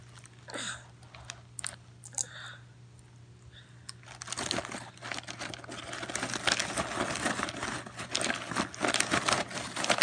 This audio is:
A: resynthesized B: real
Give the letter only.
B